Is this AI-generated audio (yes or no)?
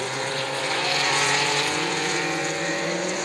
yes